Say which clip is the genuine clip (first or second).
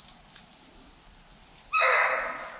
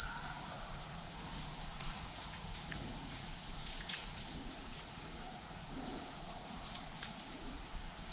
first